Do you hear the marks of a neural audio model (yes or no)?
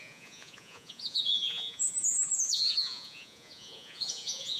yes